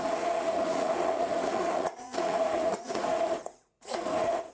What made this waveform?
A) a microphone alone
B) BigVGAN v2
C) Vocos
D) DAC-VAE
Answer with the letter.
C